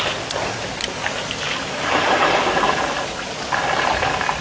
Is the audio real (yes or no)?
yes